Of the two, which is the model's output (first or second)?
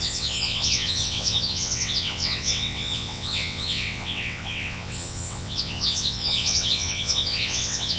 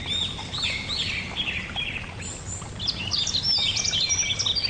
first